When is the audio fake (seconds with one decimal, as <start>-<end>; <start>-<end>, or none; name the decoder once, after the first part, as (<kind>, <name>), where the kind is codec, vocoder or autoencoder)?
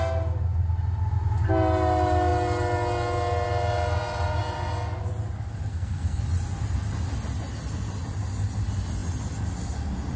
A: 5.7-6.2 (codec, SNAC)